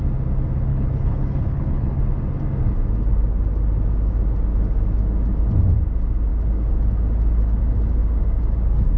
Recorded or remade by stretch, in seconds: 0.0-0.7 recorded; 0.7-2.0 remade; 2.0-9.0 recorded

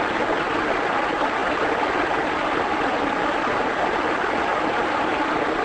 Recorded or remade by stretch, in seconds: 0.0-5.6 recorded